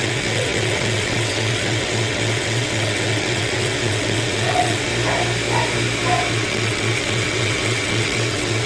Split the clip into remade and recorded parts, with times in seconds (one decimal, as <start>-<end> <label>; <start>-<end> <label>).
0.0-4.9 remade; 4.9-6.3 recorded; 6.3-8.7 remade